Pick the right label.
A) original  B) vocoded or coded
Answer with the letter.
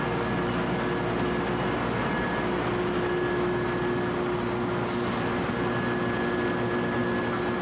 A